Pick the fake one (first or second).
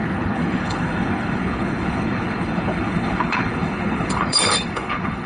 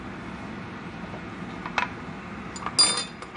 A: first